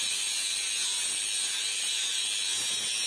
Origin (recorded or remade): recorded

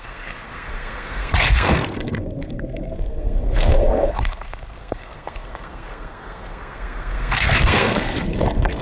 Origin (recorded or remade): remade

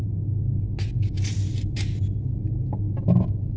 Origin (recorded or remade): recorded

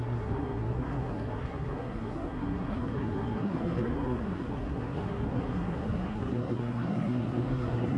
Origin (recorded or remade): remade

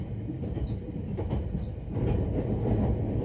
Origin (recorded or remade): recorded